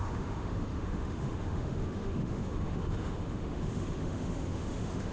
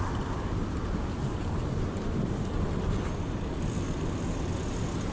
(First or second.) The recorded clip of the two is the second